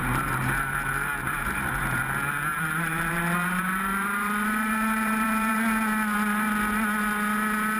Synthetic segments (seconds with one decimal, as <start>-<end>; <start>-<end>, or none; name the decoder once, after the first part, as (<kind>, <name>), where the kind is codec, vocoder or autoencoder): 0.0-2.0 (vocoder, BigVGAN v2); 2.5-5.5